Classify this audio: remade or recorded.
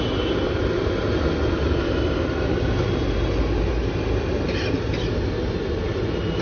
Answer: recorded